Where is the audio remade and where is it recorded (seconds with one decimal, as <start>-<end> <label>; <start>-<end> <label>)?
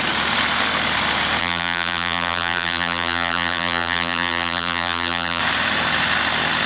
0.0-1.4 recorded; 1.4-5.4 remade; 5.4-6.7 recorded